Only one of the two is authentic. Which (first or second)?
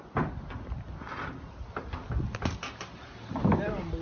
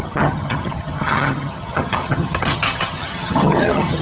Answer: first